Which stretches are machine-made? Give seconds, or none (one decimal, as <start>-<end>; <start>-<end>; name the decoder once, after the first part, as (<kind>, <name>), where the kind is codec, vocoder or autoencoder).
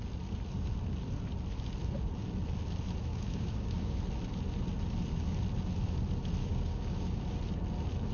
3.1-4.0 (codec, DAC); 6.4-7.2